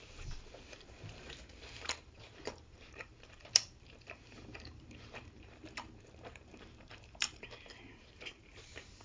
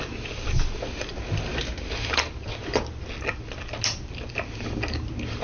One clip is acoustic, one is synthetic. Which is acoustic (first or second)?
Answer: second